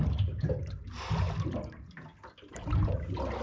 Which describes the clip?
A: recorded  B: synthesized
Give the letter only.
A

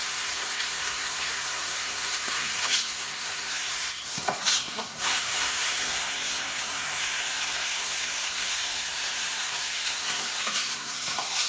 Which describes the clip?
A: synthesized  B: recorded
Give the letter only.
A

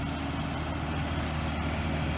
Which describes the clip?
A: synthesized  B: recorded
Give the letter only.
B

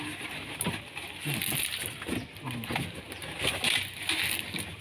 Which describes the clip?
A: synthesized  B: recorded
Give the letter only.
B